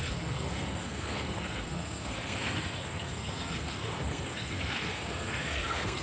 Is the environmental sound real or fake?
fake